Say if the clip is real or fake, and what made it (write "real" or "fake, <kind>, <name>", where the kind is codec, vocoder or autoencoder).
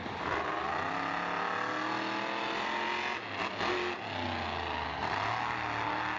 real